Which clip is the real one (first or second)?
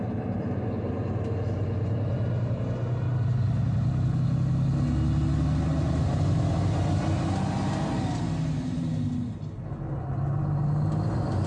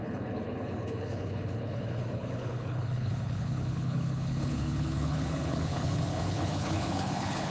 first